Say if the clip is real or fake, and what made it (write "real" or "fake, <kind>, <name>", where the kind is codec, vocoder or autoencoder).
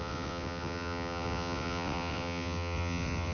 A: fake, vocoder, WaveNeXt